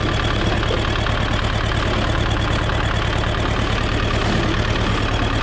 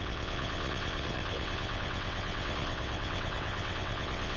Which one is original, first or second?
first